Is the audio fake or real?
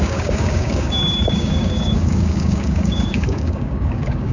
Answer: fake